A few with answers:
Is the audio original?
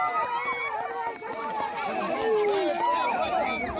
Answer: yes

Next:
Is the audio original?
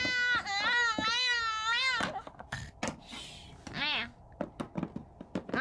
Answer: yes